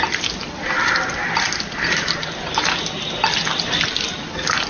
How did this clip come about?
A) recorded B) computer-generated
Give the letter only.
A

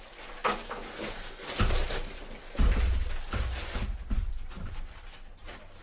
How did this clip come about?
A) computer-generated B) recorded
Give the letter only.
B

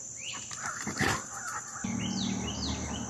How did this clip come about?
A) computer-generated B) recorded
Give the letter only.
B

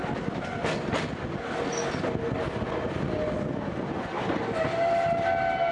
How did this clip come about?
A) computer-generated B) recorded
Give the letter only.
B